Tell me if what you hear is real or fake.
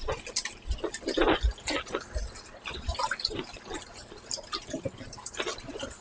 real